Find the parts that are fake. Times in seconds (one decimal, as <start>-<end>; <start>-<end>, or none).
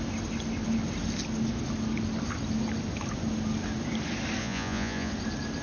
4.4-5.1